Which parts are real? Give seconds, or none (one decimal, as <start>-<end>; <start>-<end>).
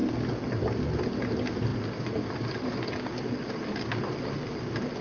0.0-5.0